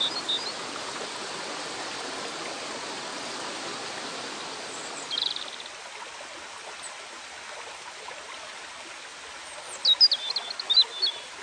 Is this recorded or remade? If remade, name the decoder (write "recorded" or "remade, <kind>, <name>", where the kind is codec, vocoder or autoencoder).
recorded